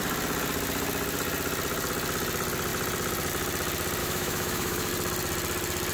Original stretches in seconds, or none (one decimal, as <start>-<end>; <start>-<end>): 0.0-4.0; 4.9-5.9

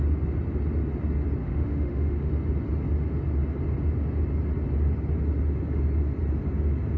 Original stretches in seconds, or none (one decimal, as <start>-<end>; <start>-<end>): 0.0-1.4; 2.3-7.0